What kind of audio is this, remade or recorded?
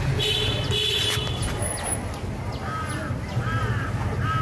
recorded